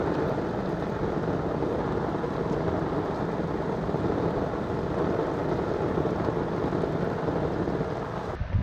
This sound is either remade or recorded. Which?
recorded